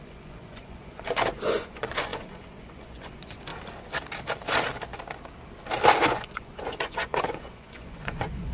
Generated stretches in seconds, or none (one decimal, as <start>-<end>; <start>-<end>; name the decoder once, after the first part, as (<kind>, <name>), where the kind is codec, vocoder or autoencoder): 0.0-3.5 (vocoder, Vocos); 6.0-8.5